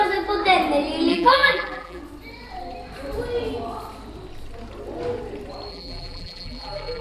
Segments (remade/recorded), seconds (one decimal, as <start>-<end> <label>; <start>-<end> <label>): 0.0-1.1 recorded; 1.1-2.0 remade; 2.0-5.7 recorded; 5.7-7.0 remade